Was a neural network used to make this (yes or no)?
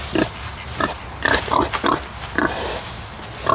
no